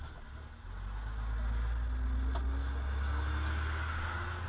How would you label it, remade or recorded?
recorded